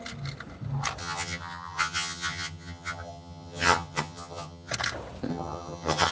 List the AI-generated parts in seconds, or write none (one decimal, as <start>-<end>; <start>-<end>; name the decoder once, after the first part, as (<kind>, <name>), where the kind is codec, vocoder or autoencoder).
1.0-4.7 (vocoder, HiFi-GAN); 5.3-6.1